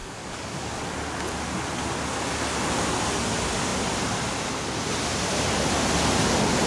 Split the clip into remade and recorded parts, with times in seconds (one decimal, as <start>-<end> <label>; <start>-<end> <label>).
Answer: 0.0-0.9 remade; 0.9-6.7 recorded